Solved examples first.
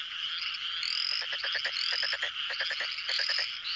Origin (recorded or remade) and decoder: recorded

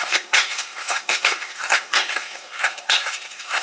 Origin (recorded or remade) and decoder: remade, codec, SNAC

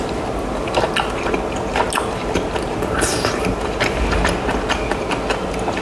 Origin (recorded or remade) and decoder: recorded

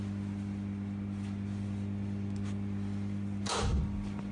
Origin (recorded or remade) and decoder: recorded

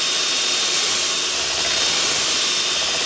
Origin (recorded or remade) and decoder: recorded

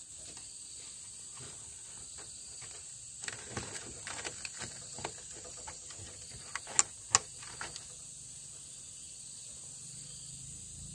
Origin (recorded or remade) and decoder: recorded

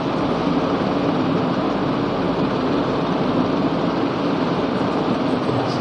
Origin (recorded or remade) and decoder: recorded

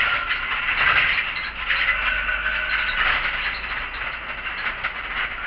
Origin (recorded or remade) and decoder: recorded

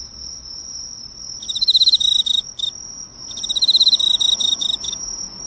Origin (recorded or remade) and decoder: recorded